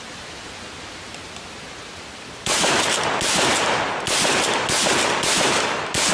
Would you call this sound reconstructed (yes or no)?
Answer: yes